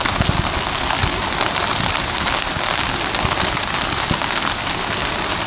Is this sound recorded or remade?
recorded